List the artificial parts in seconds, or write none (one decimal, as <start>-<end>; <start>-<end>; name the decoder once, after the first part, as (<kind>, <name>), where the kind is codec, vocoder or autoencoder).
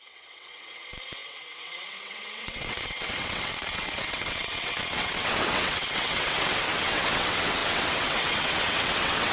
0.0-9.3 (vocoder, WaveNeXt)